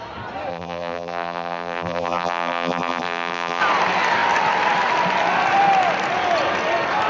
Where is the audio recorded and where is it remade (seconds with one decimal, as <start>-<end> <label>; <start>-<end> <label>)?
0.0-0.5 recorded; 0.5-3.6 remade; 3.6-7.1 recorded